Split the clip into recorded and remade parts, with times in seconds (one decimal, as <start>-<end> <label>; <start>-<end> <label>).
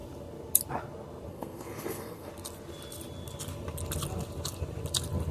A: 0.0-1.3 recorded; 1.3-2.3 remade; 2.3-5.3 recorded